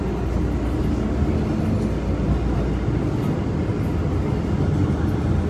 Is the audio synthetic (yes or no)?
no